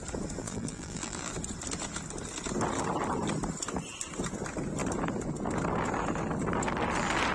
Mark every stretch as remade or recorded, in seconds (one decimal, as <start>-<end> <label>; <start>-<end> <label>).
0.0-0.4 recorded; 0.4-1.3 remade; 1.3-7.3 recorded